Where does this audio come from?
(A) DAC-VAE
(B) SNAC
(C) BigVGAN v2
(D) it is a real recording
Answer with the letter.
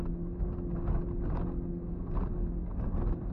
D